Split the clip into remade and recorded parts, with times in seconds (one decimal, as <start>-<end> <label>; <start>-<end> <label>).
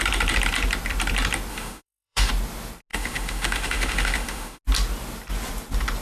0.0-1.5 recorded; 1.5-2.3 remade; 2.3-2.9 recorded; 2.9-4.6 remade; 4.6-6.0 recorded